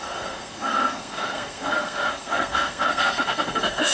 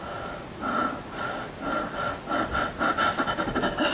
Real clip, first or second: second